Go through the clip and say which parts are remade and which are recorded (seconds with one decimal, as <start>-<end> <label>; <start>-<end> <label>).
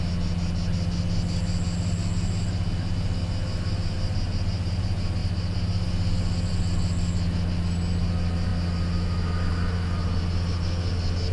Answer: 0.0-11.3 recorded